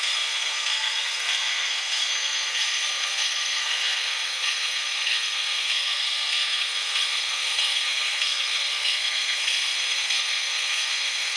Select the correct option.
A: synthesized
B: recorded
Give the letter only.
A